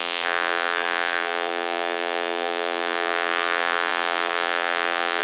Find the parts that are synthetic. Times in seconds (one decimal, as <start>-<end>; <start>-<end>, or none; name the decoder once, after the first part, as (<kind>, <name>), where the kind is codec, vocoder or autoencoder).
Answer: 0.0-5.2 (vocoder, BigVGAN v2)